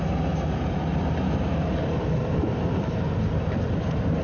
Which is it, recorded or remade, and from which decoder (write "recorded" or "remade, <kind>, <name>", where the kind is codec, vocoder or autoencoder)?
remade, vocoder, BigVGAN v2